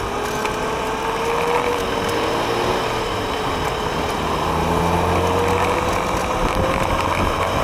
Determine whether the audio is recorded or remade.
recorded